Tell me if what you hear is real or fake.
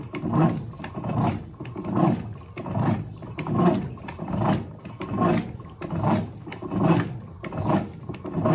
real